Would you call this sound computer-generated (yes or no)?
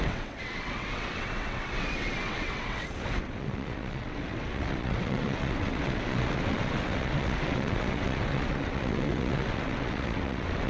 yes